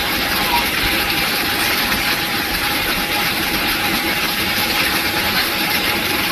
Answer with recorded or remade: remade